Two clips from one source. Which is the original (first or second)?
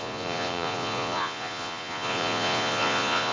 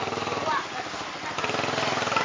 second